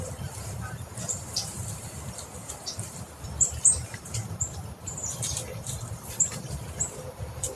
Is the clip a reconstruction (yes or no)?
yes